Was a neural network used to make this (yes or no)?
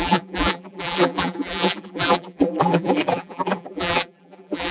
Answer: yes